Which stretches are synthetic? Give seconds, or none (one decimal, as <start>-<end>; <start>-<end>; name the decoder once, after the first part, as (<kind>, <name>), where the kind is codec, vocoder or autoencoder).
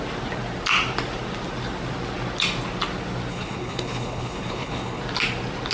3.3-5.0 (codec, HILCodec)